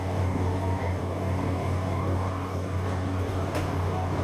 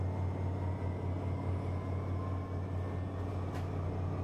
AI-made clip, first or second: first